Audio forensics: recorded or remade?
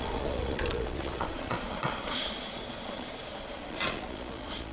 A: remade